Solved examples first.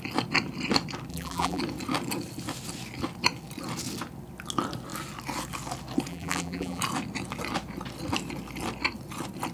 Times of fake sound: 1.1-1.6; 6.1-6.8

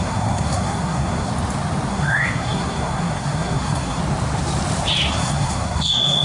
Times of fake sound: 0.0-1.3; 1.9-4.0; 5.1-6.2

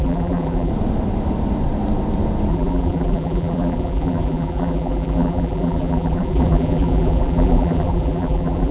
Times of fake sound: 0.0-0.7; 2.5-8.7

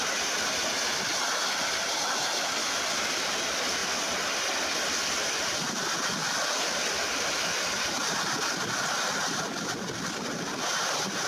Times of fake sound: 2.6-3.3; 3.8-4.3

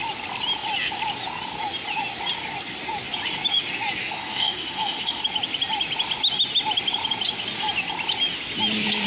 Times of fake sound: 4.0-5.2

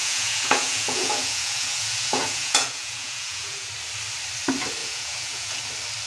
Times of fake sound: 0.0-3.7; 4.8-5.6

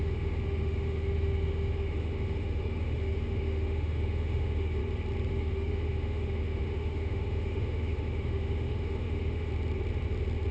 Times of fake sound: 0.0-4.8; 5.3-9.5

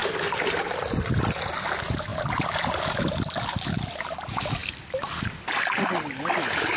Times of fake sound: none